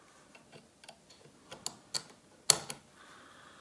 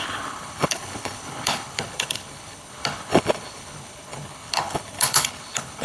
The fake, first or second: second